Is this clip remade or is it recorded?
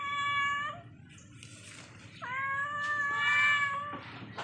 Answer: recorded